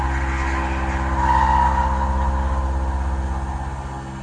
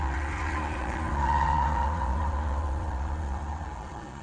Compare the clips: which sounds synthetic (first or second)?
second